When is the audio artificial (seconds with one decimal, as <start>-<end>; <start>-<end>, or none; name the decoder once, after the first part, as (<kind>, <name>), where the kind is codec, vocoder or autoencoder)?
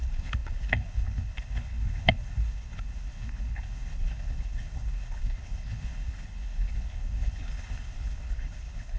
0.0-9.0 (codec, HILCodec)